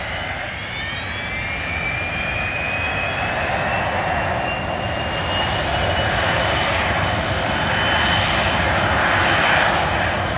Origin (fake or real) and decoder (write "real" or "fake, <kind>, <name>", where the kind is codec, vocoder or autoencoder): real